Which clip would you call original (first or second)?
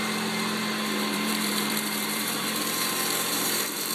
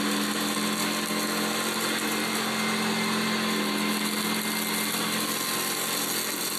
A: second